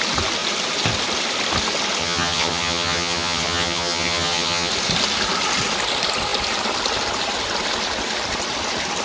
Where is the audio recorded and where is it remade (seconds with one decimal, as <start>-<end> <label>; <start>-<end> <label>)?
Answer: 0.0-2.0 recorded; 2.0-4.7 remade; 4.7-9.0 recorded